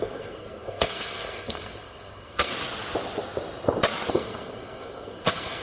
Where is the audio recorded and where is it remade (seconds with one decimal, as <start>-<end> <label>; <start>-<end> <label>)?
0.0-2.5 remade; 2.5-4.1 recorded; 4.1-5.6 remade